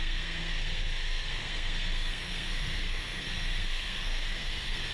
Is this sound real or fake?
fake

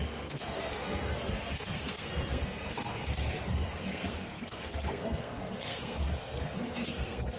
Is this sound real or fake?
fake